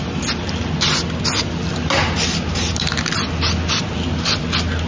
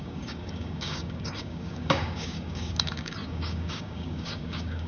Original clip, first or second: first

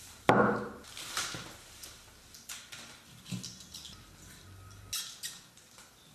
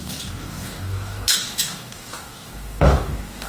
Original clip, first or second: first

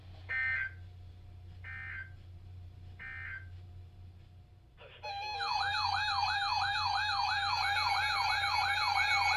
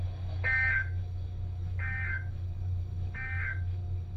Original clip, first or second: first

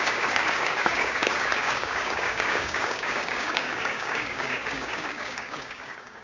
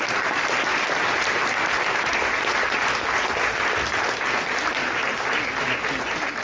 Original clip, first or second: second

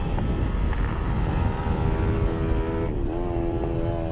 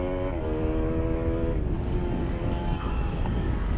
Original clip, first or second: first